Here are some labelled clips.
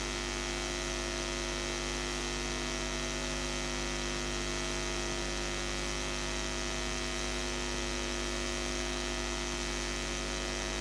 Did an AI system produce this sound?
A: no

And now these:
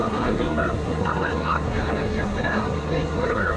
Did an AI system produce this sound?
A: yes